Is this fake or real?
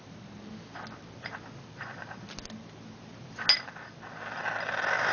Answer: real